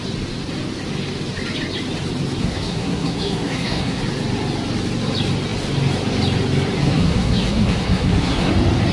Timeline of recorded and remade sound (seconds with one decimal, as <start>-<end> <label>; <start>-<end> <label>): 0.0-2.4 recorded; 2.4-4.0 remade; 4.0-6.8 recorded; 6.8-8.5 remade; 8.5-8.9 recorded